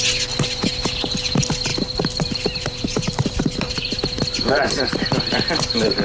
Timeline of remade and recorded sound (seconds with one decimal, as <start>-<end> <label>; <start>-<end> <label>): 0.0-1.7 recorded; 1.7-5.0 remade; 5.0-6.0 recorded